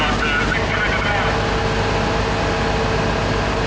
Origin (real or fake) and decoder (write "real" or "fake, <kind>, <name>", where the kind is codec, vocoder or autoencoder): real